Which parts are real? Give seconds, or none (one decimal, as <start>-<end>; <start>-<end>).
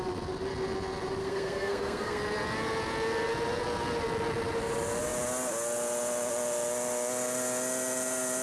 0.0-1.2; 2.2-8.4